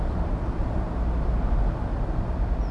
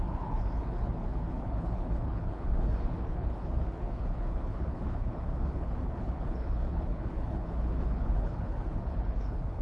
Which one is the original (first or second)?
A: first